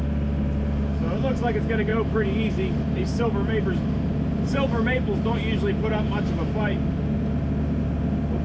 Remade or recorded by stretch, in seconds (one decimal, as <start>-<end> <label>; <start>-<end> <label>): 0.0-8.4 recorded